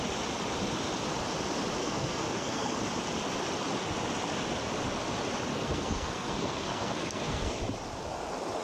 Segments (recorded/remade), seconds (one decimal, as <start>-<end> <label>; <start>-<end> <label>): 0.0-1.8 recorded; 1.8-2.8 remade; 2.8-5.5 recorded; 5.5-7.6 remade; 7.6-8.6 recorded